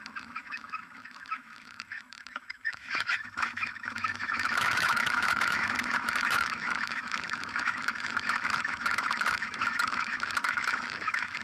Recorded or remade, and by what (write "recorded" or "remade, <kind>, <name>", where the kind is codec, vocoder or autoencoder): remade, autoencoder, DAC-VAE